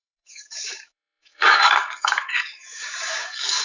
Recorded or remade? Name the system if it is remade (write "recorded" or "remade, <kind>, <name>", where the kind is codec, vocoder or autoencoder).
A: remade, codec, DAC